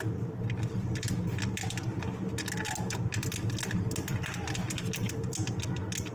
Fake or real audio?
real